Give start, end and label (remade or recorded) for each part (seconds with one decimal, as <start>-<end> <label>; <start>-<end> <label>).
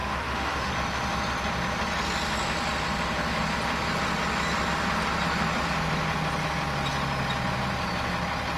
0.0-0.7 remade; 0.7-8.6 recorded